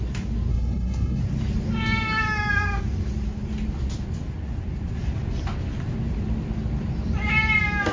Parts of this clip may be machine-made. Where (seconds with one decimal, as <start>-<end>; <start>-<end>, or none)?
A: 0.5-1.2